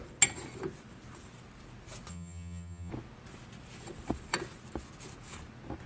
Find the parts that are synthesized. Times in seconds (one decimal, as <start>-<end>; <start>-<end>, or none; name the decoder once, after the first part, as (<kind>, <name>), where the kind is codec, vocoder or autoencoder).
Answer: 2.1-2.9 (vocoder, HiFi-GAN)